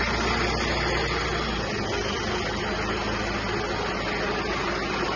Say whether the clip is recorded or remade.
recorded